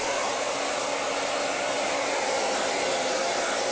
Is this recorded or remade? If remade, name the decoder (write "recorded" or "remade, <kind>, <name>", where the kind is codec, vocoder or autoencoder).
recorded